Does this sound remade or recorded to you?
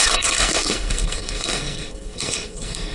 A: remade